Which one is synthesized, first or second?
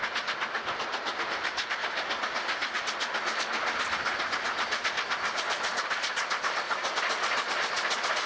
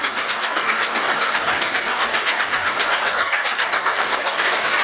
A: second